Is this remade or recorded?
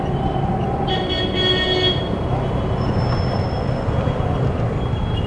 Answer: recorded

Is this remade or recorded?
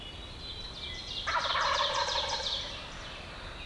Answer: recorded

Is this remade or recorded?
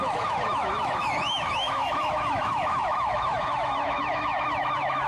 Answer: remade